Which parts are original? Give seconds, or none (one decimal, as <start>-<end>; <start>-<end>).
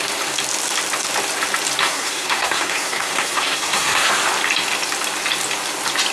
0.0-1.8; 4.1-6.1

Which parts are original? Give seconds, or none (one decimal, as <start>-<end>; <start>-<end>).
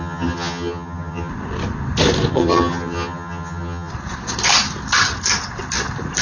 1.3-2.3; 3.9-6.2